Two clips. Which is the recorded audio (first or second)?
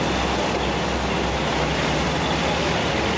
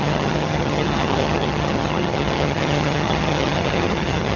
first